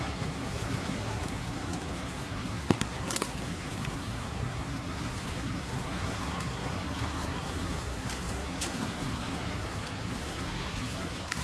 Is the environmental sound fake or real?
fake